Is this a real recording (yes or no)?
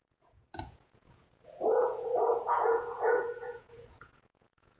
no